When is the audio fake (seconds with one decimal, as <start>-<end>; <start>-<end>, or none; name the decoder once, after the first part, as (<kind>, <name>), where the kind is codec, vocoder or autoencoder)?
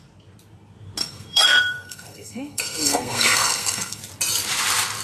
1.0-4.0 (codec, SNAC)